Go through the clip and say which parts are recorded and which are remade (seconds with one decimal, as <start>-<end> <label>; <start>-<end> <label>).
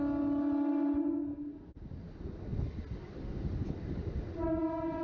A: 0.0-5.0 recorded